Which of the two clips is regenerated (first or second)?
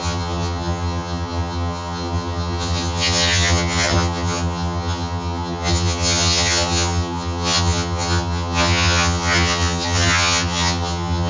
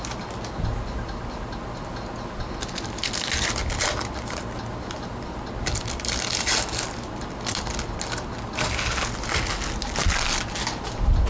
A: first